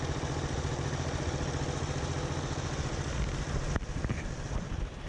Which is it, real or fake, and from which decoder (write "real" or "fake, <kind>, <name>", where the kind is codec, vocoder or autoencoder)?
real